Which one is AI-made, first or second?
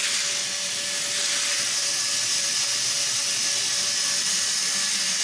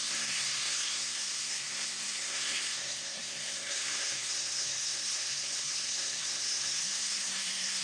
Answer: second